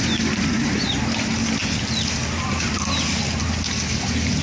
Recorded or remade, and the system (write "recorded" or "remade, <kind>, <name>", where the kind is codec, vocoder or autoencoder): recorded